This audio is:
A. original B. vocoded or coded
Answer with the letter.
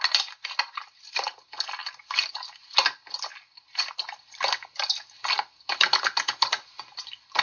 A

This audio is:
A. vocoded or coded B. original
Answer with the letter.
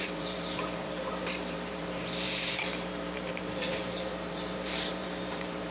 A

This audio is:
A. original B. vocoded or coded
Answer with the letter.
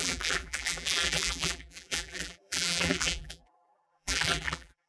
B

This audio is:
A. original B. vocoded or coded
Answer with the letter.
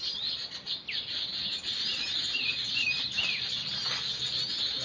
A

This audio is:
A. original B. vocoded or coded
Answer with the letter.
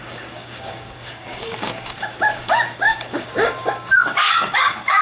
B